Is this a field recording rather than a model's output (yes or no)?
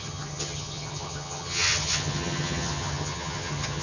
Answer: no